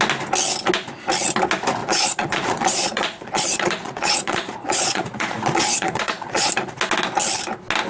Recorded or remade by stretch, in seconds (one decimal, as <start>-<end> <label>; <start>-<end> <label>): 0.0-1.8 recorded; 1.8-6.5 remade; 6.5-7.9 recorded